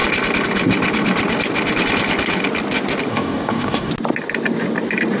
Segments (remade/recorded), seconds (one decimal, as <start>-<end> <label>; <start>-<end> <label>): 0.0-3.1 recorded; 3.1-3.9 remade; 3.9-5.2 recorded